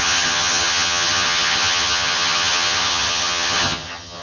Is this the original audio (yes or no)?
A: no